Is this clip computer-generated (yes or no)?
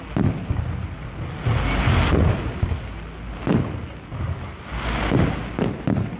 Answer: no